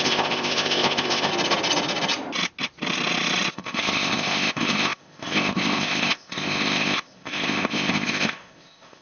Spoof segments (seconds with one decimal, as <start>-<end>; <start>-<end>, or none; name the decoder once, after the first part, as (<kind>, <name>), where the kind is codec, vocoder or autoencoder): 0.0-1.3 (codec, ZipCodec); 3.5-9.0